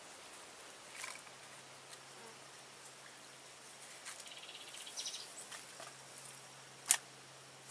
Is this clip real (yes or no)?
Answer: yes